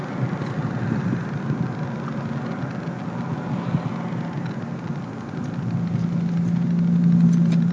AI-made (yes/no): no